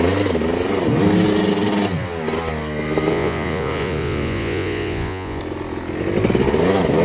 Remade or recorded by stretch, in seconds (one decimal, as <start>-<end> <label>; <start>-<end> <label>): 0.0-3.1 recorded; 3.1-5.4 remade; 5.4-7.0 recorded